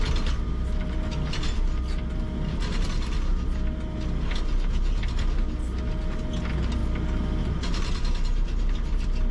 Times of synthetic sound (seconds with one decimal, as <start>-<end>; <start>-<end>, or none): none